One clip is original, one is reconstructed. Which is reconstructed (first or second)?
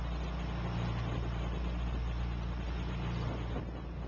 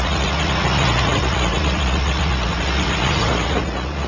second